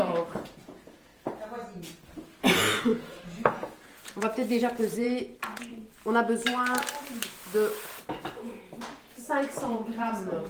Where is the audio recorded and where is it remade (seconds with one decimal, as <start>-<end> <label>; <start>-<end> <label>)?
0.0-1.1 remade; 1.1-2.4 recorded; 2.4-5.7 remade; 5.7-9.6 recorded; 9.6-10.5 remade